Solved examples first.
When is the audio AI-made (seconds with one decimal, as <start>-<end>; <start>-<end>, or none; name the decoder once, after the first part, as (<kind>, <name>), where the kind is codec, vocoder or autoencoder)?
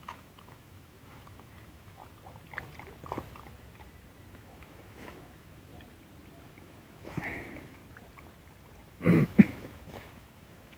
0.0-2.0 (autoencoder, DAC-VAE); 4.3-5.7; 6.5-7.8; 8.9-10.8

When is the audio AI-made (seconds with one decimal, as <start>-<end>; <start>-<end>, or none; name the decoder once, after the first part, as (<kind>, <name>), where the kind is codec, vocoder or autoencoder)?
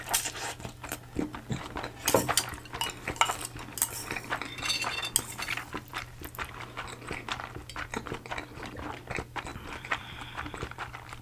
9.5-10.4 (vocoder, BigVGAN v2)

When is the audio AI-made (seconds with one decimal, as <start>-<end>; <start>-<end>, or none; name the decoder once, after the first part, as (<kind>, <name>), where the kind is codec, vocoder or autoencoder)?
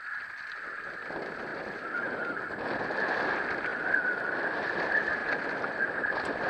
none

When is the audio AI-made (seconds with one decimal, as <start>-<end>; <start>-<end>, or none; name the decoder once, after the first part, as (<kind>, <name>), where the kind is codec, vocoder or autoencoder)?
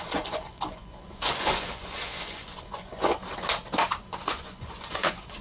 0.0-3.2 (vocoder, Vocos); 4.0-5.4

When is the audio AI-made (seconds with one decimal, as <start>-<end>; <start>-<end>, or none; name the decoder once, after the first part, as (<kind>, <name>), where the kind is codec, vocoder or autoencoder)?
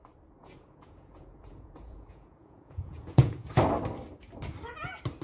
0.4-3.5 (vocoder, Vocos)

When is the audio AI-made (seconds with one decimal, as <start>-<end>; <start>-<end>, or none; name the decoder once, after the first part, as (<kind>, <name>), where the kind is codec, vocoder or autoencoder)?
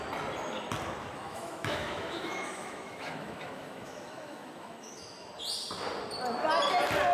1.0-5.3 (autoencoder, DAC-VAE)